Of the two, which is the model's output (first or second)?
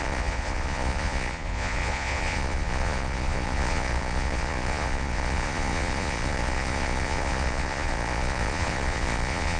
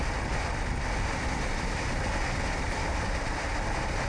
first